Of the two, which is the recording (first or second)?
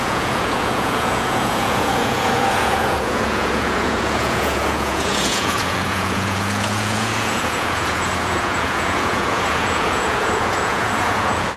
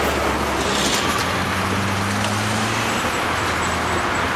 second